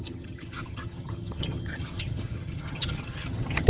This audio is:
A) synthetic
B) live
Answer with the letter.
A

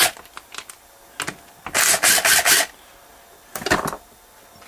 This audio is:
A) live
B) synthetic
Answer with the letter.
A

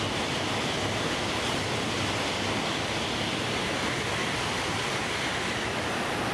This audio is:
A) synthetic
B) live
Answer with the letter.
B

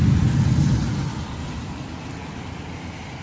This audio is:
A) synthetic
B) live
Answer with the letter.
B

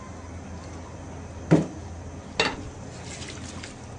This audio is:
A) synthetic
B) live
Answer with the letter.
B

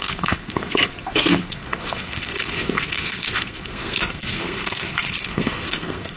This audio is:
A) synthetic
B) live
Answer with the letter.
A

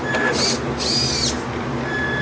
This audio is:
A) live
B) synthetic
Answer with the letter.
A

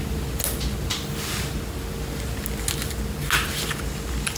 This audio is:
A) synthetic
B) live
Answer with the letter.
B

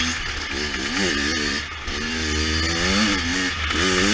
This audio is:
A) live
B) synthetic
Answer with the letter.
A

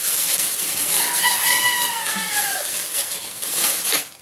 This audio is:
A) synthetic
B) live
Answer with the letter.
A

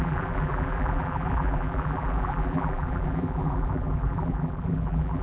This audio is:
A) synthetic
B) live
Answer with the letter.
A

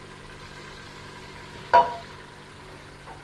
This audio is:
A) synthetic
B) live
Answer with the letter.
B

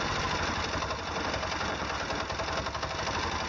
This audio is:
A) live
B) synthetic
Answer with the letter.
A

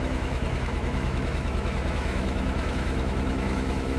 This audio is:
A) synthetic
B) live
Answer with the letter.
A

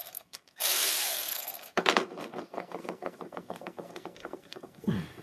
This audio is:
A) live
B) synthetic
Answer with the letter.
B